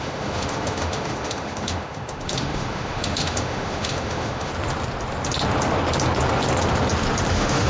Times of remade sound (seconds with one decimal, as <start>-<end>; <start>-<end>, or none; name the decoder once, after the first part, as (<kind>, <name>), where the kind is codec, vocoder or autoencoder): 0.0-4.5 (autoencoder, DAC-VAE); 7.3-7.7